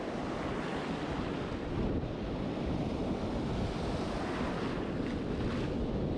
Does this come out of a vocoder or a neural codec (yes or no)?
no